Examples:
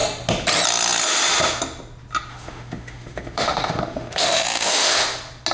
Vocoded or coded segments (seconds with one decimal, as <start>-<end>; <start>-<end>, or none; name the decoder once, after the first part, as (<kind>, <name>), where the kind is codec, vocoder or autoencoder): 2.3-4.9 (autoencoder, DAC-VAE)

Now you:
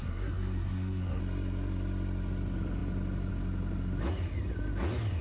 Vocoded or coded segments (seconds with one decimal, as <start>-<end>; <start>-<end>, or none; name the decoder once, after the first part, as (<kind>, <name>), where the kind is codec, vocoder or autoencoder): 0.0-1.2 (codec, SNAC)

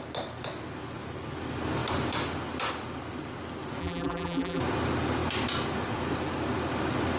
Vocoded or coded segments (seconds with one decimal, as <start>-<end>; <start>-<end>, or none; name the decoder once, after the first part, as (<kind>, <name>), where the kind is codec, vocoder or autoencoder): 3.8-4.6 (vocoder, BigVGAN v2)

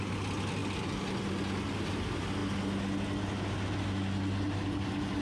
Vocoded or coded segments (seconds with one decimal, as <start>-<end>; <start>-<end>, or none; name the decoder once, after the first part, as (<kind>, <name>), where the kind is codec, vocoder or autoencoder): none

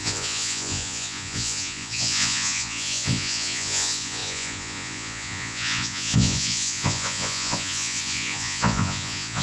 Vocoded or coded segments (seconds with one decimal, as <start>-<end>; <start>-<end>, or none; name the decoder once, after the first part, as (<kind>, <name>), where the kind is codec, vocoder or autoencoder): 0.0-9.4 (vocoder, Vocos)